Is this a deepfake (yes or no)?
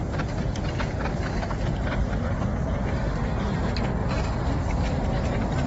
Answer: no